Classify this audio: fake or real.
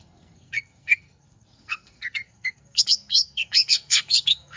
fake